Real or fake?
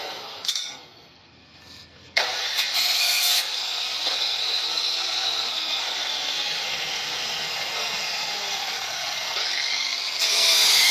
fake